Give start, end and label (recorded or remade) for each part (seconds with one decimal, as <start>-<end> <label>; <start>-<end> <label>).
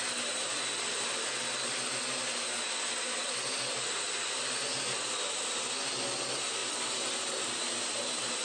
0.0-8.4 recorded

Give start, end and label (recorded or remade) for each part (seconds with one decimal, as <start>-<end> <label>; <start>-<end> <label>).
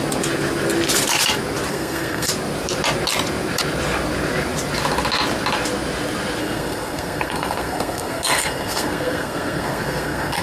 0.0-1.7 recorded; 1.7-2.3 remade; 2.3-6.4 recorded; 6.4-10.4 remade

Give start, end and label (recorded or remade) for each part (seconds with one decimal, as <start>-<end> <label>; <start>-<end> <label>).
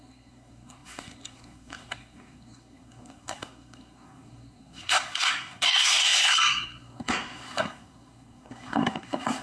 0.0-9.4 remade